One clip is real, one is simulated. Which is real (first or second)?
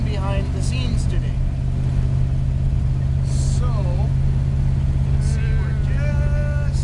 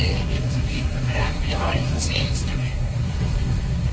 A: first